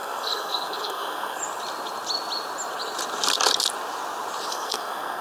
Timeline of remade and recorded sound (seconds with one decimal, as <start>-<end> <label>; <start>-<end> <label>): 0.0-1.4 remade; 1.4-4.5 recorded; 4.5-5.2 remade